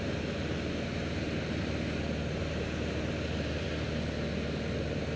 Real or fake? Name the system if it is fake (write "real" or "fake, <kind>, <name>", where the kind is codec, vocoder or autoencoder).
real